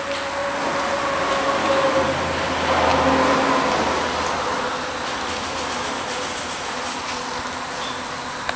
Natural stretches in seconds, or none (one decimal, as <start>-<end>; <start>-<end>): 0.0-1.6; 2.2-8.6